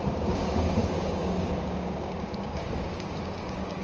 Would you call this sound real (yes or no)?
no